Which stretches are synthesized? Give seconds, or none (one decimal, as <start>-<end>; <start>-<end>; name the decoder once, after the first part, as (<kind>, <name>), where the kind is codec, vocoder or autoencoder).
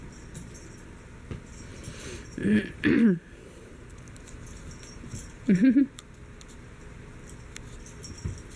1.7-5.8 (vocoder, BigVGAN v2)